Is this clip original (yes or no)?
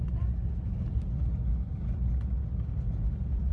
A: yes